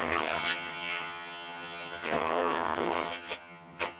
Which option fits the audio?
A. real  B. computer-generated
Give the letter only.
B